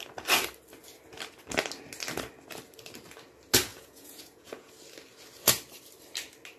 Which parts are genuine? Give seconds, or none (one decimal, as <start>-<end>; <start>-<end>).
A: 0.0-3.7; 4.7-6.6

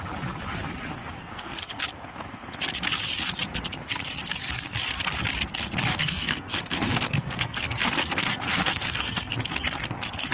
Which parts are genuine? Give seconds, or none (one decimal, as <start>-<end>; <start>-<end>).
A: 0.0-1.2; 1.8-5.9; 9.3-10.3

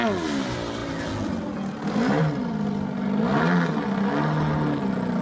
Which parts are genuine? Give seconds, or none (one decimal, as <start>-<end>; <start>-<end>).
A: 0.0-5.2

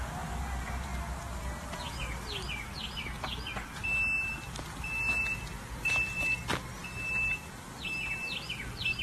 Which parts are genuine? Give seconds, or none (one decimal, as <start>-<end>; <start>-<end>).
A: 0.0-9.0

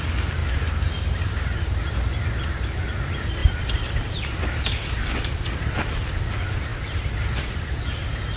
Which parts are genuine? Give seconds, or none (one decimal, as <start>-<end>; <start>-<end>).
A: 0.0-0.4; 1.6-3.4; 5.7-6.7; 7.9-8.4

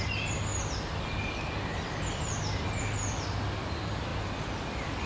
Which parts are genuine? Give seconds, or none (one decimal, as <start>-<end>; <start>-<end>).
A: 0.0-5.1

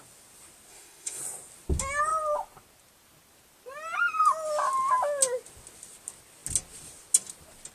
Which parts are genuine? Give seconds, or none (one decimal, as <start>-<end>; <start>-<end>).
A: 0.0-0.7; 1.2-7.7